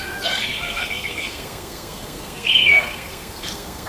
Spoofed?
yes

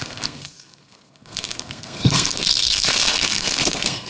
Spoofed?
yes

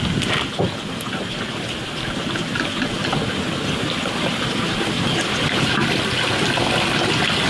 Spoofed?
no